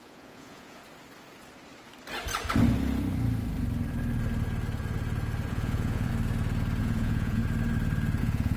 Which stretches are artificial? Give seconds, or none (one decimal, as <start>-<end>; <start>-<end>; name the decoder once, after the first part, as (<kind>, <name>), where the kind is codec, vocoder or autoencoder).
0.0-0.8 (vocoder, Vocos); 5.5-6.1; 6.8-7.4; 8.2-8.6